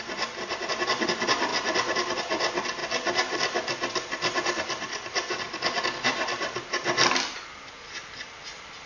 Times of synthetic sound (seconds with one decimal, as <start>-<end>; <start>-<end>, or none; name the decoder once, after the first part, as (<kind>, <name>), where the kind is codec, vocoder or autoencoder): none